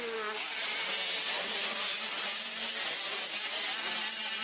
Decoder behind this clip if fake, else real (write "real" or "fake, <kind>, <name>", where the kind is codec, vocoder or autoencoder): real